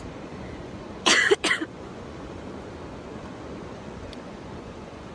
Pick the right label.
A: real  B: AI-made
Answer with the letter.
B